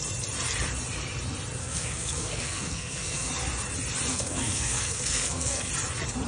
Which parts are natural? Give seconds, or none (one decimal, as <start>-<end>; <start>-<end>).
0.0-1.6; 3.3-4.1; 5.7-6.3